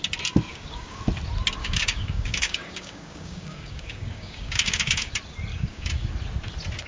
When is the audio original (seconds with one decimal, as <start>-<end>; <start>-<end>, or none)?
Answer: 0.0-0.5; 1.0-1.6; 5.1-5.5; 6.1-6.9